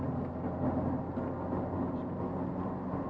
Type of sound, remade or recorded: recorded